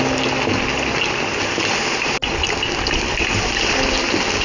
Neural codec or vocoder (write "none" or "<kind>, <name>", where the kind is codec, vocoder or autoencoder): none